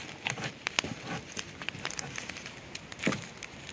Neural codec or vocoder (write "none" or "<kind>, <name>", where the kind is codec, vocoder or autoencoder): none